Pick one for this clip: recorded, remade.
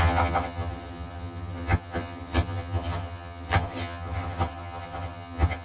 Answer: remade